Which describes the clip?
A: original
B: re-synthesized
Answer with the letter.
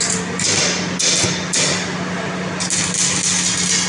A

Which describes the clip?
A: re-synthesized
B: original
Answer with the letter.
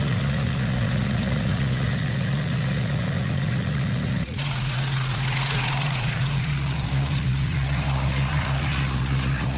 A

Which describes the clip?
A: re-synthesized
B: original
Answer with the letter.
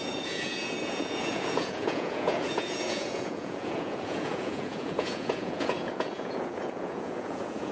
A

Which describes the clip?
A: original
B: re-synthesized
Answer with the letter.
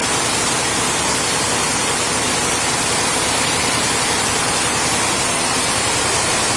A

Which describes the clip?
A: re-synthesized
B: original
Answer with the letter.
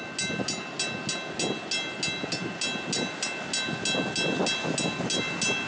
B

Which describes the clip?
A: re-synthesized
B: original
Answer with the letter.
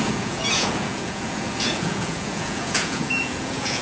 A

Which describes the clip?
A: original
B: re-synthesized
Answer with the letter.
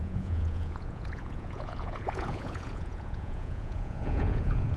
B